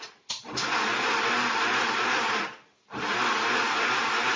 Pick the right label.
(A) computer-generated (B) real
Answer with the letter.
B